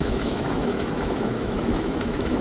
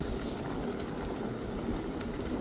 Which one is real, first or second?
second